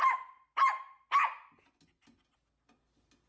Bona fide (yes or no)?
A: yes